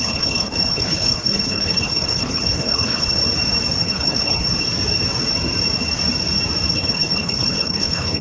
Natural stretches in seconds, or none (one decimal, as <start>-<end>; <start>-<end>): 3.2-3.8; 4.5-6.7